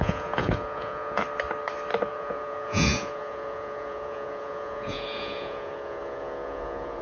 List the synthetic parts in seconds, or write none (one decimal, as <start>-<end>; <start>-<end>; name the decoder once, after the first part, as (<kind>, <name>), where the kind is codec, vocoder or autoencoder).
0.0-1.2 (vocoder, Vocos); 2.1-7.0